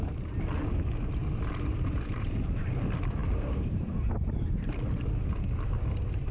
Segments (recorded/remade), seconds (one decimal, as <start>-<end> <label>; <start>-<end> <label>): 0.0-1.2 recorded; 1.2-2.6 remade; 2.6-3.2 recorded; 3.2-5.0 remade; 5.0-6.3 recorded